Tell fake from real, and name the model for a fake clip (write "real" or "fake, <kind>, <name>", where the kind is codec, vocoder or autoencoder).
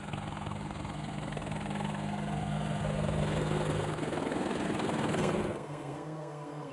fake, codec, SNAC